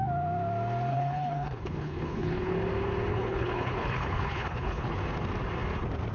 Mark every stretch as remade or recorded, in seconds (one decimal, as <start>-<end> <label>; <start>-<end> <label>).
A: 0.0-0.9 recorded; 0.9-2.5 remade; 2.5-3.1 recorded; 3.1-5.0 remade; 5.0-6.1 recorded